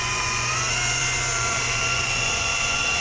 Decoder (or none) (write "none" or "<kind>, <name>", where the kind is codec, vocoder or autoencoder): vocoder, Vocos